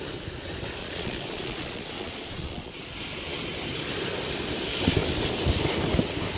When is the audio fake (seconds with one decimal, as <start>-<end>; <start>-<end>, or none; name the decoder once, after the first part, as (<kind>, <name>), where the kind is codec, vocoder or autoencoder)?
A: 0.8-2.7 (vocoder, Vocos)